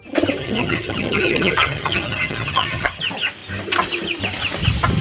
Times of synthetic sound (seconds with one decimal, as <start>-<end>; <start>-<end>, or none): 0.4-3.0